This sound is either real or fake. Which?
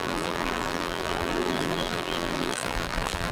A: fake